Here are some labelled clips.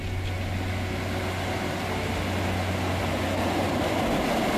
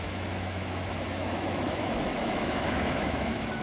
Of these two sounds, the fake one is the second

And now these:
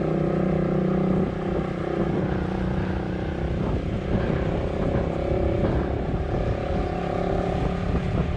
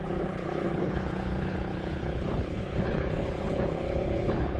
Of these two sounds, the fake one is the second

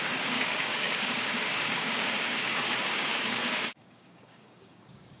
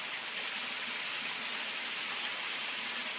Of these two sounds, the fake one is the first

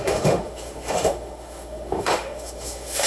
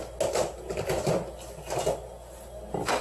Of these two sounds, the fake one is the first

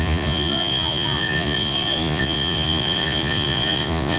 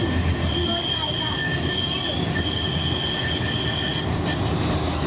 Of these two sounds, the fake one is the first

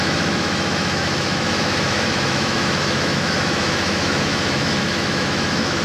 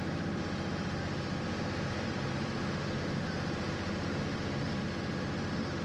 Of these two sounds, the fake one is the first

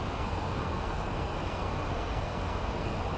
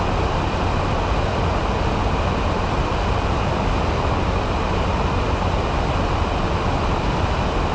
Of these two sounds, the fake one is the first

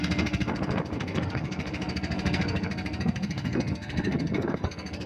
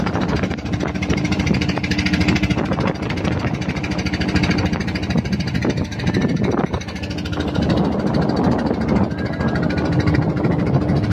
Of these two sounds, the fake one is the first